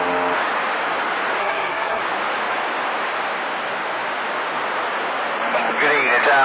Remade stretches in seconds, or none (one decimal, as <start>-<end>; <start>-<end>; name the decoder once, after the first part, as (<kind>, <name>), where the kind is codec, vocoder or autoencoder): 1.4-2.0 (codec, SNAC)